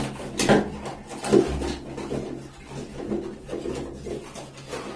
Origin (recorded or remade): recorded